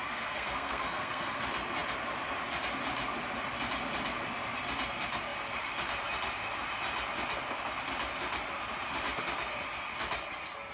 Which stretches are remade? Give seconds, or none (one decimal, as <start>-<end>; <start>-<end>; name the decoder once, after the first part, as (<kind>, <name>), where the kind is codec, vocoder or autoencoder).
0.0-1.4 (codec, SNAC)